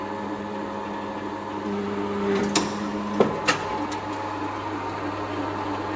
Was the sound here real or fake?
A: real